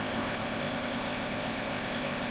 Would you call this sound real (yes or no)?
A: no